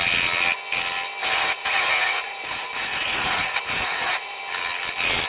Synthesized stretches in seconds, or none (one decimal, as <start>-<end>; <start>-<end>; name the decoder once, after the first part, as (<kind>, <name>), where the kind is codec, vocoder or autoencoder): 1.2-4.4 (vocoder, Vocos)